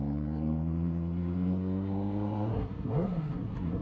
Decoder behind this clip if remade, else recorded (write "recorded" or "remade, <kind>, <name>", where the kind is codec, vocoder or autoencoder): remade, codec, SNAC